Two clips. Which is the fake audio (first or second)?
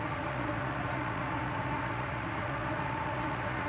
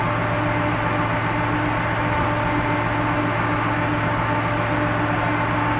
first